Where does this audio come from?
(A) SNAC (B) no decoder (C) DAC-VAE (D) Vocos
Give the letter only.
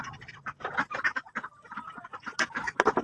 B